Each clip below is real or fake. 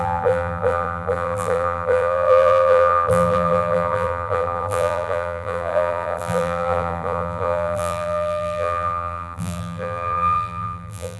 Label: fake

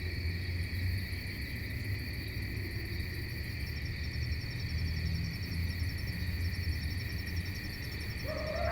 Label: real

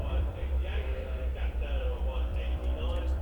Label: fake